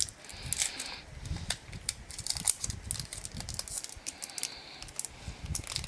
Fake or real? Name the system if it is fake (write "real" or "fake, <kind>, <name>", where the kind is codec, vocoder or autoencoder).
real